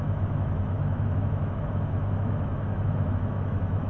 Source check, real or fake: fake